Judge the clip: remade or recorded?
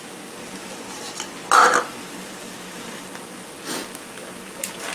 recorded